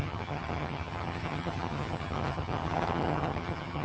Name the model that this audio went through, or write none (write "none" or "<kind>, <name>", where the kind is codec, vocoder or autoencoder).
vocoder, HiFi-GAN